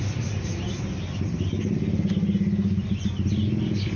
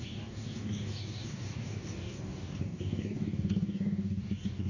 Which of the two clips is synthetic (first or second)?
second